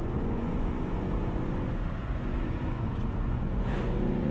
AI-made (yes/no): yes